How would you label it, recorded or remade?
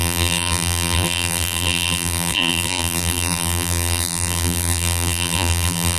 remade